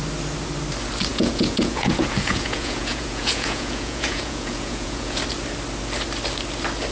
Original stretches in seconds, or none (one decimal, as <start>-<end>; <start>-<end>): 0.0-1.1; 5.2-6.9